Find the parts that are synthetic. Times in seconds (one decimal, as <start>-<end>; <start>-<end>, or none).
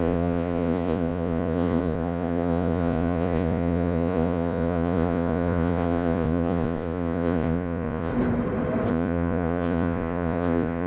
0.0-8.1; 8.9-10.9